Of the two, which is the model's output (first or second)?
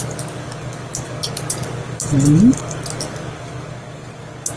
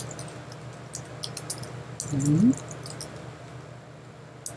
first